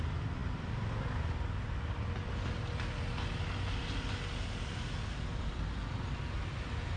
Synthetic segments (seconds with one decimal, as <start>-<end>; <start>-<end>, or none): none